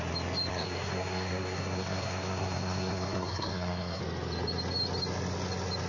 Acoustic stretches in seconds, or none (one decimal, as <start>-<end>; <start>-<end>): 0.0-0.5; 4.0-5.9